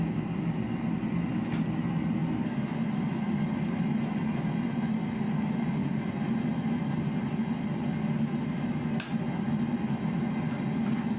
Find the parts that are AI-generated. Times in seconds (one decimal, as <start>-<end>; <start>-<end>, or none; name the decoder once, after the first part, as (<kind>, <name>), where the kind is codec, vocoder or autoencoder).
none